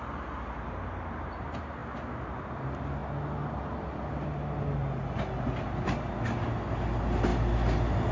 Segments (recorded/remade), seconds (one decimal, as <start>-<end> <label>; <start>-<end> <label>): 0.0-8.1 recorded